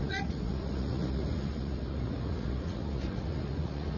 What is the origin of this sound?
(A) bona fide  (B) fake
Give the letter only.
B